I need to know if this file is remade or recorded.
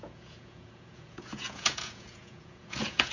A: remade